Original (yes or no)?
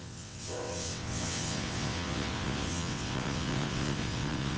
no